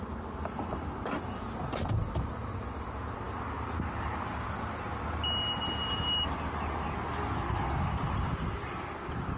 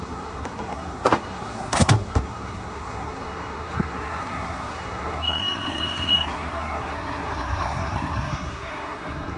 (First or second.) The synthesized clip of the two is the second